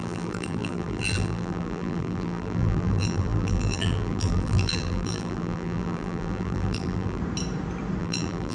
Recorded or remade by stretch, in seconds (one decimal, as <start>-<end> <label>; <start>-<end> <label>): 0.0-7.2 remade; 7.2-8.0 recorded; 8.0-8.5 remade